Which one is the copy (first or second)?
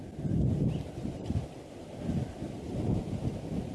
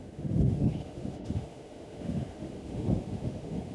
second